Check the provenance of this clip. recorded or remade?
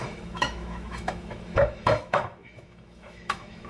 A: remade